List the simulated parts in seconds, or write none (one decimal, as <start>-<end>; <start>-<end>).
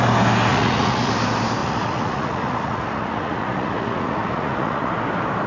0.5-1.1; 1.6-4.9